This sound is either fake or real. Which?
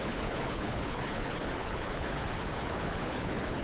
fake